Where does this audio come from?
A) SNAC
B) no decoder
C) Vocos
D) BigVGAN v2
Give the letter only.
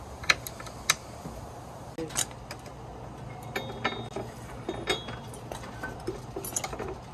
B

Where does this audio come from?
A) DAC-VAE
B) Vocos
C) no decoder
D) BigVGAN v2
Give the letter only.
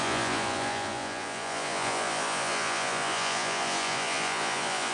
B